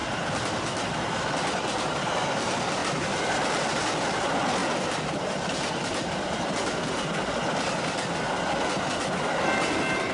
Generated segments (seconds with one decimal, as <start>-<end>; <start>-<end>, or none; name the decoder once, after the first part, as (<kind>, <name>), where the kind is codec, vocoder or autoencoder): none